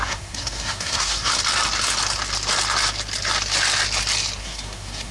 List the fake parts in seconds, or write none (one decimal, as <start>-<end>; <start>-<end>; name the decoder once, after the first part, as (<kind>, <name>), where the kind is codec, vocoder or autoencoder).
0.0-1.3 (codec, SNAC); 4.4-5.1